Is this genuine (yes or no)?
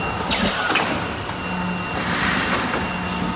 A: yes